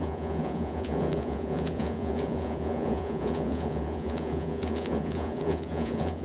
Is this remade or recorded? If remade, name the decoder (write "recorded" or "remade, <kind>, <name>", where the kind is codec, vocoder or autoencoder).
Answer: remade, vocoder, Vocos